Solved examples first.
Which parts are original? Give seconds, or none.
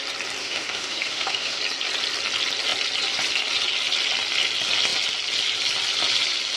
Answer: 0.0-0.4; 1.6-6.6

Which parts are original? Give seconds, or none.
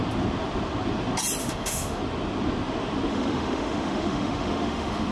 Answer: 0.0-1.4; 2.0-3.1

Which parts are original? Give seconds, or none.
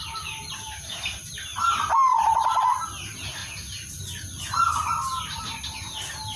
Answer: 0.0-6.4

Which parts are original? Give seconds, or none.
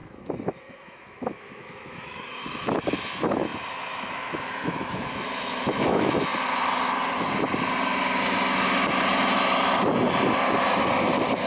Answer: 6.3-11.5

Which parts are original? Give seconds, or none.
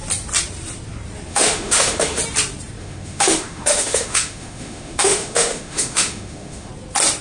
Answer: 0.0-1.3; 2.2-2.8; 6.7-7.2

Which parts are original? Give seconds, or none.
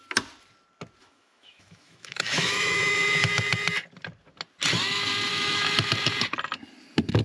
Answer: 0.0-1.0; 3.3-5.3; 5.9-7.2